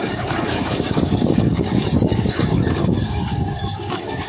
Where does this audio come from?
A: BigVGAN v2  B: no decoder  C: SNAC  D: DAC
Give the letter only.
D